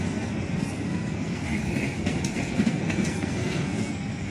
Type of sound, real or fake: fake